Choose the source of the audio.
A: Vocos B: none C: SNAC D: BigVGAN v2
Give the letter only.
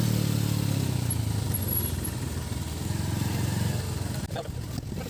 B